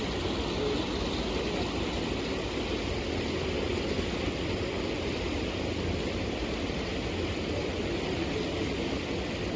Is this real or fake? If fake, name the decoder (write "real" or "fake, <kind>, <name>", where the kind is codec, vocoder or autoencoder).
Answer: real